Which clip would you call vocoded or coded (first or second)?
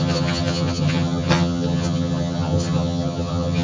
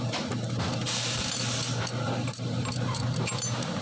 first